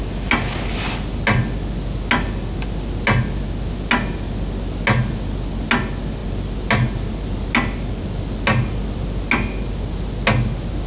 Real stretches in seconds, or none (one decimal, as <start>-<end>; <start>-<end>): 0.0-10.9